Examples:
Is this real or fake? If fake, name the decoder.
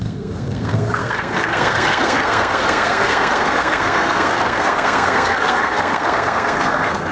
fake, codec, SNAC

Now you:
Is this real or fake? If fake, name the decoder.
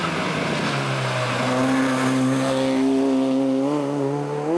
real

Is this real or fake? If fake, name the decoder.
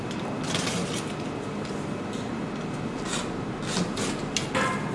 real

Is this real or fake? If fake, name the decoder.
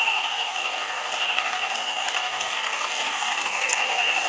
fake, codec, DAC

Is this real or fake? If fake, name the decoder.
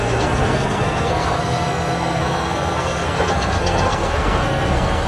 fake, codec, SNAC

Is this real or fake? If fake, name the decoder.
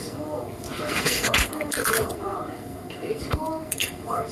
fake, codec, SNAC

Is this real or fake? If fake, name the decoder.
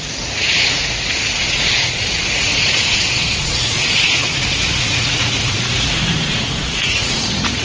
fake, vocoder, Vocos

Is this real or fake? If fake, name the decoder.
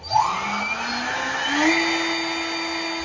real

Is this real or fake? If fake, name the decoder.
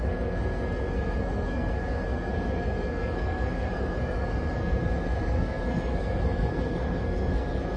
fake, codec, SNAC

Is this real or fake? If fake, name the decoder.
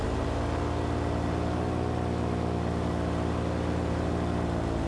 real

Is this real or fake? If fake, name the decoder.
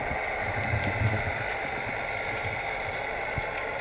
real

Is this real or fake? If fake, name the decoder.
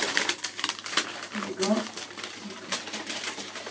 fake, vocoder, BigVGAN v2